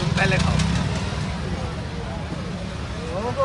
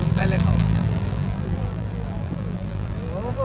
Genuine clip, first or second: first